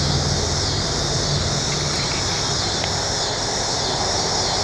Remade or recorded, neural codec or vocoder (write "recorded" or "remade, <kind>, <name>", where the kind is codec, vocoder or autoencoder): recorded